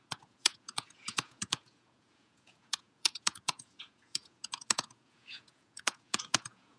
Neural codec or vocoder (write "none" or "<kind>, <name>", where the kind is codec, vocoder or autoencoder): vocoder, Vocos